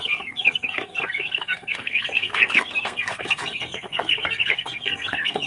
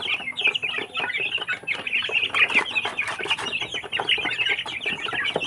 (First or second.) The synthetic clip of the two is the first